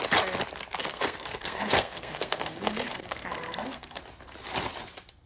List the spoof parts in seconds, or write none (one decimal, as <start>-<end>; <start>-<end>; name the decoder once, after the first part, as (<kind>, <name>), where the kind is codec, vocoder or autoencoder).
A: 0.8-4.0 (codec, SNAC)